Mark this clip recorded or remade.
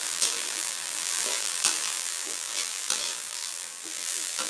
remade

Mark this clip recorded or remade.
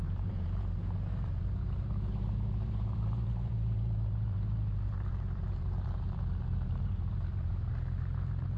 remade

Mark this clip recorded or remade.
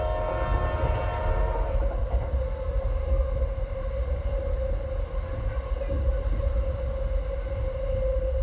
recorded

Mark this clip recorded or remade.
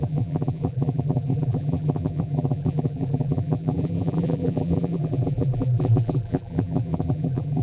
remade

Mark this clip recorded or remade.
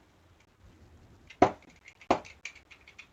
recorded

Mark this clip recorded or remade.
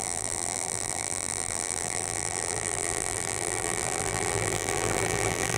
remade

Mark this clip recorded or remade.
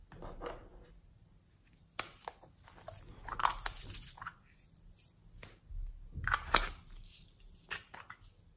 recorded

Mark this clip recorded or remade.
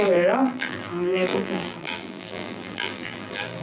remade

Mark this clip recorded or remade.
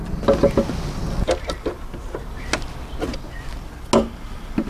recorded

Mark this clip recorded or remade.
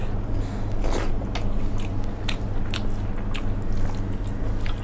recorded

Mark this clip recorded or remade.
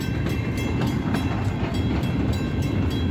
remade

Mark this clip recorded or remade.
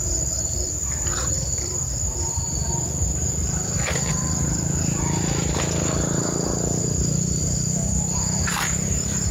remade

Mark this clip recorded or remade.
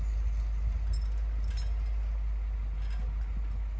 recorded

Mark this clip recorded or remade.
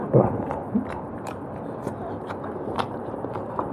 remade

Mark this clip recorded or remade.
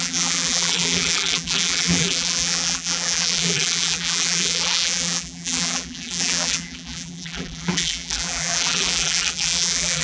remade